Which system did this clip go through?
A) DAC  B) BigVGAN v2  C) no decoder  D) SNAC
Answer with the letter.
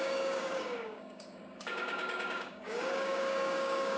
A